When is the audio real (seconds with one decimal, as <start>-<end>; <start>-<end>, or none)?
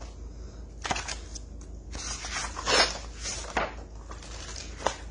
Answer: 0.0-5.1